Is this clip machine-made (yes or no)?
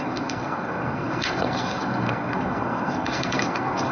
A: yes